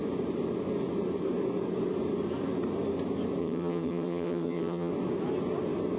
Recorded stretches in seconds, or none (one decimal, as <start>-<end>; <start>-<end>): 0.0-3.4; 4.9-6.0